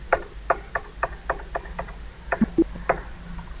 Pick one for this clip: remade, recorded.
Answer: recorded